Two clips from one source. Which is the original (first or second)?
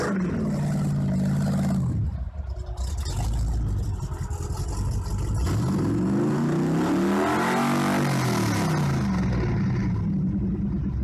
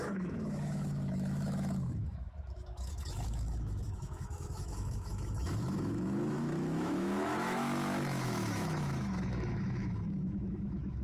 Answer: first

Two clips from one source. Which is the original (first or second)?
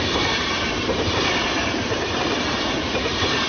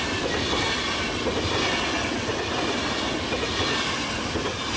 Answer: second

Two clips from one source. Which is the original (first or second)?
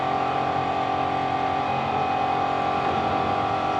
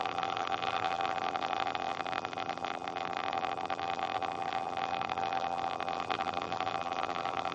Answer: first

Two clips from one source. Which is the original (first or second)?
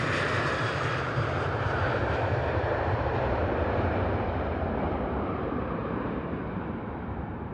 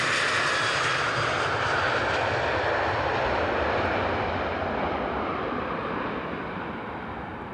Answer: second